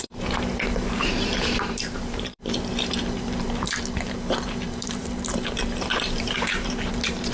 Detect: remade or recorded remade